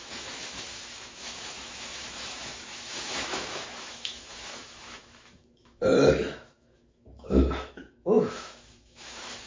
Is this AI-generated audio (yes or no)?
yes